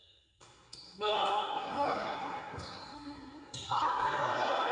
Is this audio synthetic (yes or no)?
yes